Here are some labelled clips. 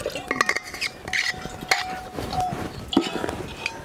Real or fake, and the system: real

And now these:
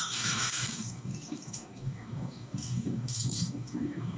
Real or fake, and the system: fake, codec, DAC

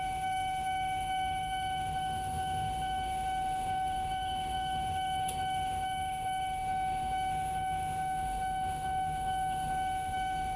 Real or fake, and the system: fake, autoencoder, DAC-VAE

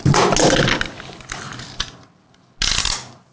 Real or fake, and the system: real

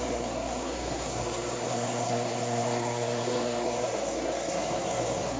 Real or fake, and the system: fake, codec, SNAC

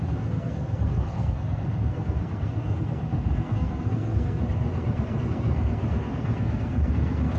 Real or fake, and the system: fake, codec, SNAC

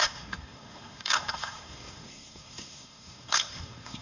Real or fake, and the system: fake, codec, SNAC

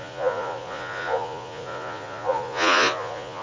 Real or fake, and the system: fake, vocoder, Vocos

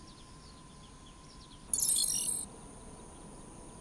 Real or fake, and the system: real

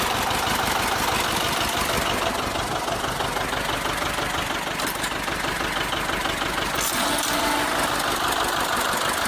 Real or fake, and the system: real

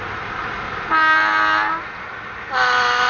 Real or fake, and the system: real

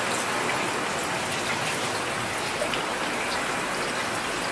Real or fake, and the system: real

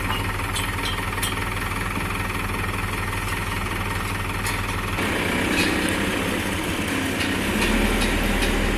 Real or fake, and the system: real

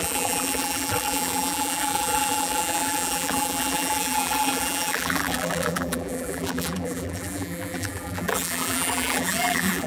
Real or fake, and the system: fake, vocoder, BigVGAN v2